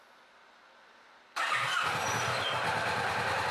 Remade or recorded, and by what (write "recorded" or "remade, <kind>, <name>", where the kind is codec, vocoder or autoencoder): recorded